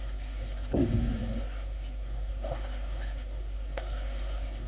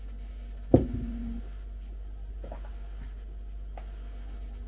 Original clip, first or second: second